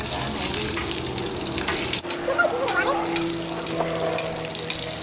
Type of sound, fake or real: real